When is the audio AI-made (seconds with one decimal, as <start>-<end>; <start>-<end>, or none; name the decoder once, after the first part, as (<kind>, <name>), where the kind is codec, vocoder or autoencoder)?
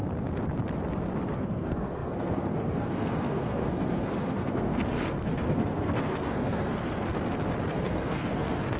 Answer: 1.4-7.0 (codec, SNAC); 7.7-8.8